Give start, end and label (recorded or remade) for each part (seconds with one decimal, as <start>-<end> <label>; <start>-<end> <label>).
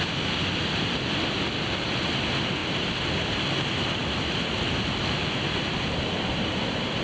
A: 0.0-7.0 recorded